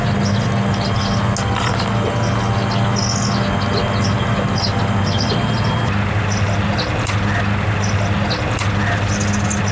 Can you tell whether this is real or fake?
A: real